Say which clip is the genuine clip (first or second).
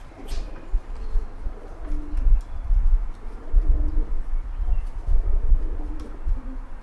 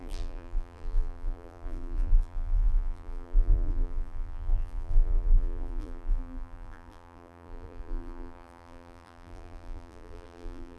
first